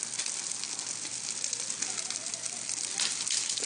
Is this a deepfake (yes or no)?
no